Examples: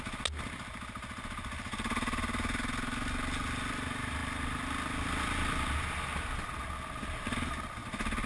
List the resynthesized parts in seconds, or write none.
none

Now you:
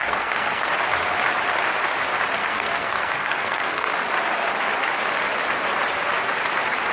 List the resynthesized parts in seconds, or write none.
0.0-0.7 (codec, SNAC); 2.4-3.9

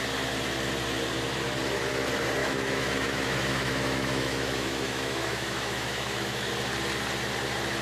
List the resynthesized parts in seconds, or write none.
2.4-6.5 (autoencoder, DAC-VAE)

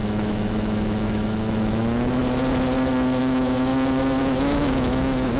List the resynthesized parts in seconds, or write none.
0.0-2.2 (autoencoder, DAC-VAE); 3.2-3.7; 4.2-5.4

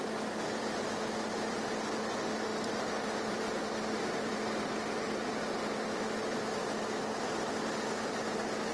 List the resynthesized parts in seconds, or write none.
none